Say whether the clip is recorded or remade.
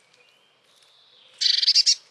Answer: recorded